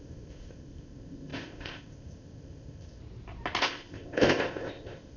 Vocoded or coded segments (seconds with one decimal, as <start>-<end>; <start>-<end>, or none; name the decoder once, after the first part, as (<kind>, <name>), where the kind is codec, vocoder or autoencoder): 0.0-3.0 (codec, ZipCodec); 3.6-5.2